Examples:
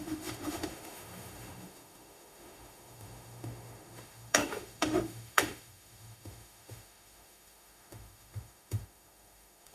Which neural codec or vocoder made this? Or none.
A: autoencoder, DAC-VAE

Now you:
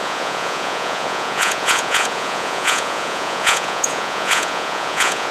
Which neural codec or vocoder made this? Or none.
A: vocoder, Vocos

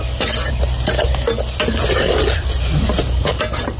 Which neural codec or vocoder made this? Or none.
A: none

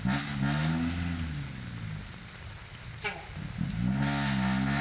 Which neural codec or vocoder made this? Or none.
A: none